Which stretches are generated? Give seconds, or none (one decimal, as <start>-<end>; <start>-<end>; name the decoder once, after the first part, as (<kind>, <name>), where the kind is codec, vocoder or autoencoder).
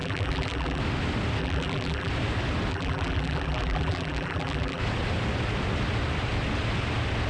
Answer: 0.0-0.8 (vocoder, BigVGAN v2); 1.4-2.1; 2.7-4.8